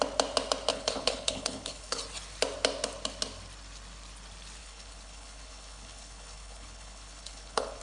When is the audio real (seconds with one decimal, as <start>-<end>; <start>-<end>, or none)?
0.0-0.7; 2.0-4.6